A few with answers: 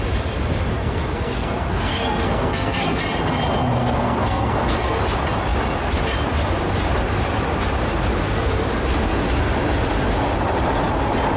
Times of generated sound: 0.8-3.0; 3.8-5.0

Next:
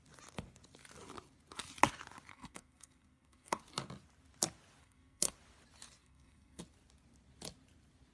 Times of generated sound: 2.3-3.6; 4.8-5.3; 6.0-6.6